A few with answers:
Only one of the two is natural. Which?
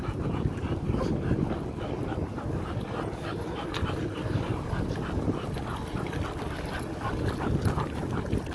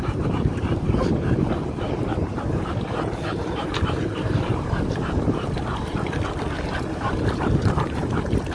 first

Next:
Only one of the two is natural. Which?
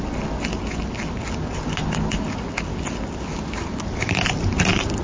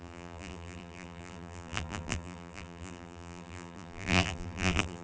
first